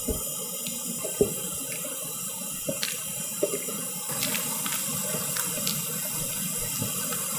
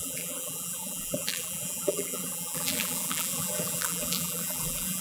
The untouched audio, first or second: first